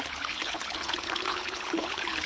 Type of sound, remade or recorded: remade